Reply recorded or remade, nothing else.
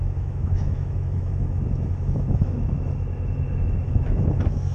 remade